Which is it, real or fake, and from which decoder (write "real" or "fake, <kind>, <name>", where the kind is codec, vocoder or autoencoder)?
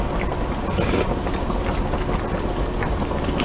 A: real